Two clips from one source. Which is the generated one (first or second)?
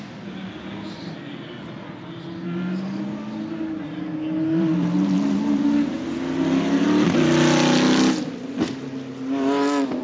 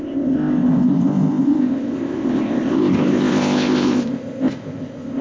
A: second